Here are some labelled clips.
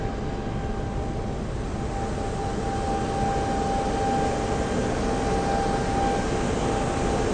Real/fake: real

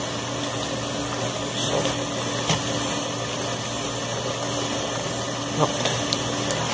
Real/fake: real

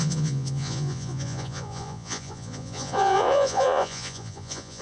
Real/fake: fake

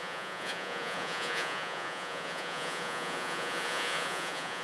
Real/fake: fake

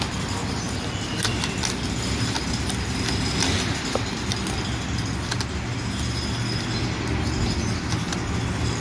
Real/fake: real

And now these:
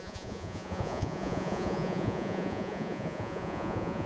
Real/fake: fake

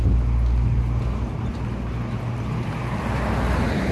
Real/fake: real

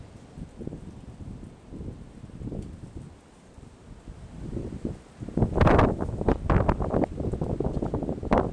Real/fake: real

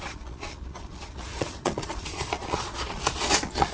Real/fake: fake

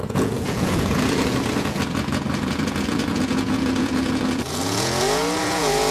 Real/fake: fake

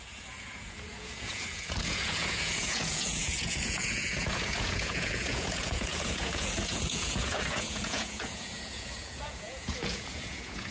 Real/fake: fake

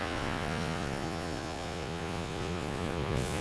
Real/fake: fake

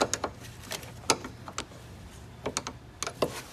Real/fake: real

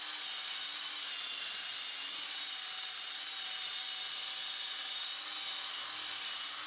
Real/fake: real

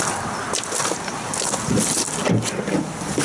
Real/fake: real